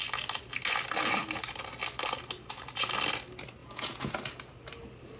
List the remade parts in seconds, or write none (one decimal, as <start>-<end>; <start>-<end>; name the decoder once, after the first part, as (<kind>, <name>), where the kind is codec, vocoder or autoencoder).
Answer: 3.6-4.1 (vocoder, Vocos)